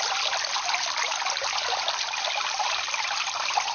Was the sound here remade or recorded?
recorded